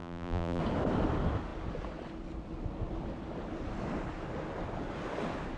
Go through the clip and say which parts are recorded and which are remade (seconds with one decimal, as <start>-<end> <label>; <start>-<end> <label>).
0.0-0.6 remade; 0.6-5.6 recorded